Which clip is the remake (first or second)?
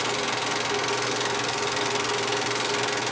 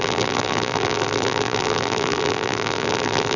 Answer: second